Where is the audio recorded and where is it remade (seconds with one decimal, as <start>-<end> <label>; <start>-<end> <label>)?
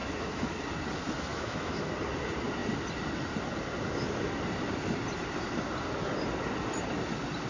0.0-0.6 remade; 0.6-1.3 recorded; 1.3-1.9 remade; 1.9-7.5 recorded